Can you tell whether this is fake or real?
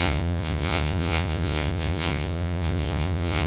fake